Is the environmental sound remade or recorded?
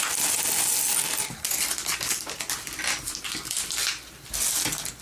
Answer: recorded